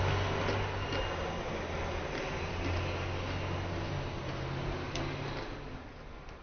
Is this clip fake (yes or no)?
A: no